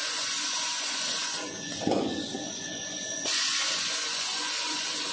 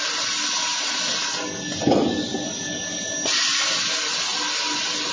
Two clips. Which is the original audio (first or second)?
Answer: second